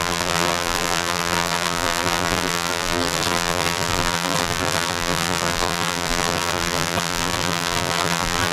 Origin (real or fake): fake